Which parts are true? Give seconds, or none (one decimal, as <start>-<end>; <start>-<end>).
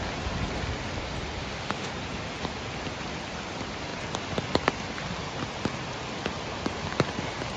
0.0-1.4; 1.9-7.6